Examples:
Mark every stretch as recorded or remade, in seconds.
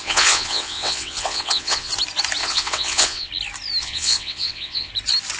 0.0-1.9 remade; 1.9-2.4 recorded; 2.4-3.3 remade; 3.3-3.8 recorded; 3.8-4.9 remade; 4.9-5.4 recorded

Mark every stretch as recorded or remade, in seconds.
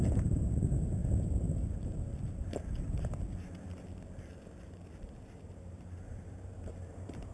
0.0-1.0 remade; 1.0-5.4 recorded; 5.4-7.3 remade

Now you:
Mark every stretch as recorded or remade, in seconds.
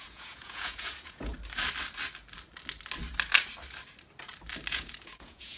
0.0-1.3 remade; 1.3-4.7 recorded; 4.7-5.6 remade